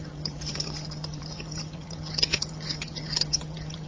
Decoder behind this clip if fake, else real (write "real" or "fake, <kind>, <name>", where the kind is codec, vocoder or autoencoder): fake, vocoder, HiFi-GAN